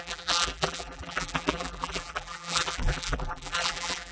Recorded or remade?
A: remade